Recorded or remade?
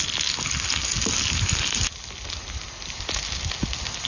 recorded